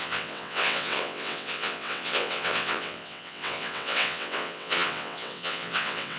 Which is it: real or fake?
fake